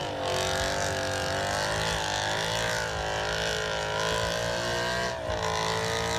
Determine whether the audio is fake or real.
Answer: real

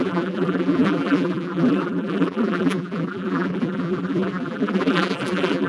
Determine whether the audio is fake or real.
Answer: fake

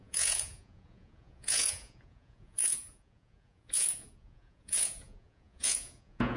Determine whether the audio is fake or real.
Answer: fake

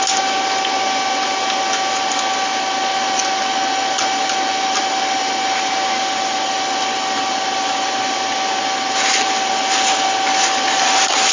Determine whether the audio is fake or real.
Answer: real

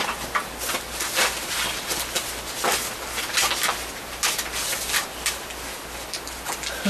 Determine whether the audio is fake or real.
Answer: real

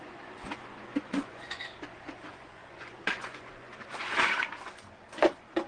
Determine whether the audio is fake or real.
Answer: fake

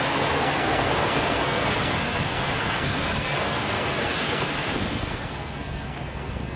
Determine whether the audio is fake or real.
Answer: fake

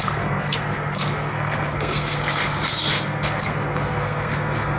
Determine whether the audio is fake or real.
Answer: fake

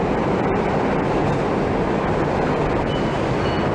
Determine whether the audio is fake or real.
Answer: real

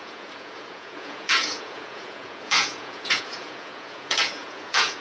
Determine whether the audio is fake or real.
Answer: fake